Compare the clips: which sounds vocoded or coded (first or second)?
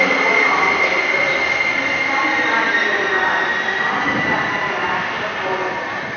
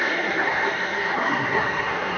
second